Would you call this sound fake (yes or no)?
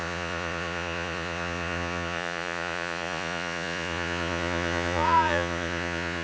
yes